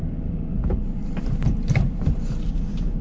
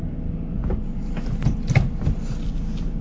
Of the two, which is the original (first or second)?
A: second